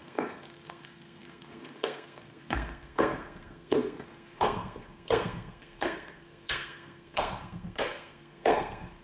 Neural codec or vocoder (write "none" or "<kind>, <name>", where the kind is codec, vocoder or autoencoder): codec, SNAC